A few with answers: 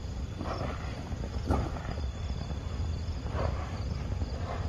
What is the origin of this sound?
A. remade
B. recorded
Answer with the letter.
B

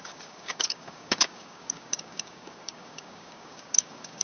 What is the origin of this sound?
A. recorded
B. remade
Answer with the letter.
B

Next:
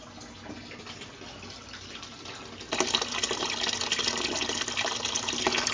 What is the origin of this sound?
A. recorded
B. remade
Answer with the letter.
A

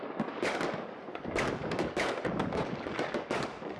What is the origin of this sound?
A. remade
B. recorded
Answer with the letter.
A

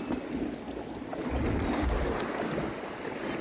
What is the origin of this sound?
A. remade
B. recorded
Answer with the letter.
B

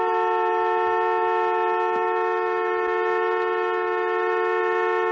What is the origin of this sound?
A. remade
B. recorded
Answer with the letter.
B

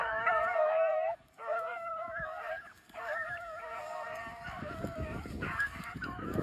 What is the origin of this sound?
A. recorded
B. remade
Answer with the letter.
B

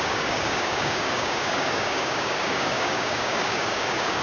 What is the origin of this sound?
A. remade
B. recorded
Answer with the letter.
A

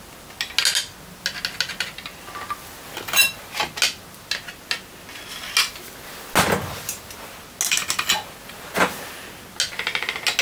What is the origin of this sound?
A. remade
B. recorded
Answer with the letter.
B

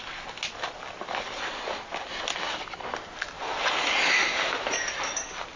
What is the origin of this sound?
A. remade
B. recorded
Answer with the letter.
B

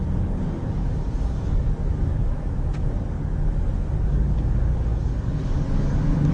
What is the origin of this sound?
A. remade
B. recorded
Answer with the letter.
A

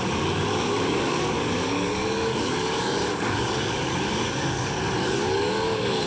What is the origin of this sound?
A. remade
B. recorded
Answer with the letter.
A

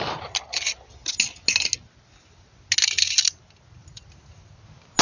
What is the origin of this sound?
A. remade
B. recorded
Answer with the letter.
B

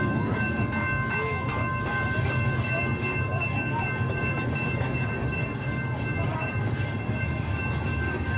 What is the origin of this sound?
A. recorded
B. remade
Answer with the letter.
B